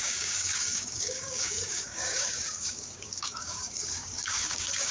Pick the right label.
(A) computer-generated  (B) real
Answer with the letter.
A